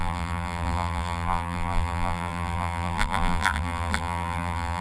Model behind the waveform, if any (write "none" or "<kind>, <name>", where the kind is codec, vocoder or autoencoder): vocoder, BigVGAN v2